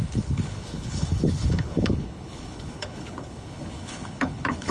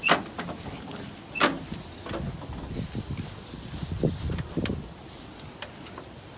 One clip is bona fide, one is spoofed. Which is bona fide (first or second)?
second